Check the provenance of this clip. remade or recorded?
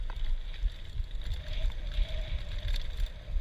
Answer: recorded